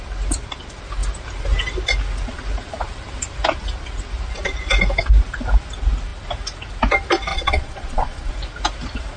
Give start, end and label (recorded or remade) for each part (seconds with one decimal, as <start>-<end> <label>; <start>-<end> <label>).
0.0-7.3 recorded; 7.3-8.3 remade; 8.3-9.2 recorded